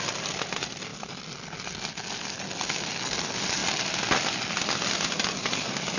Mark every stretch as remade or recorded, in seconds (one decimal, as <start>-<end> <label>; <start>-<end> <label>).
0.0-6.0 recorded